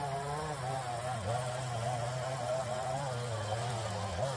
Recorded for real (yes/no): yes